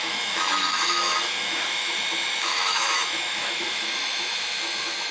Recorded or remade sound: remade